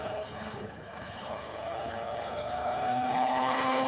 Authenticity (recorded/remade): remade